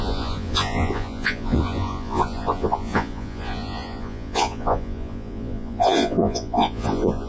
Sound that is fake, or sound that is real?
fake